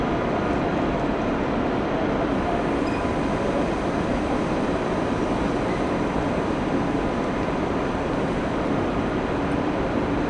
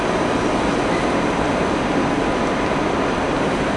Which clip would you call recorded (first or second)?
second